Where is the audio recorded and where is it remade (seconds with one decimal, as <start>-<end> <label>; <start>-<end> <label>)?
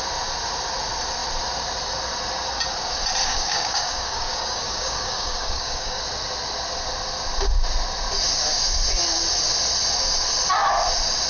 0.0-3.2 recorded; 3.2-6.0 remade; 6.0-11.3 recorded